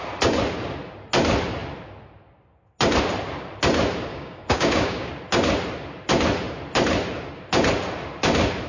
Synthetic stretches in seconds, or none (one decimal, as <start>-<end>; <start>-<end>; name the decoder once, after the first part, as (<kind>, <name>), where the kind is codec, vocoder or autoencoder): 4.1-5.1 (codec, DAC)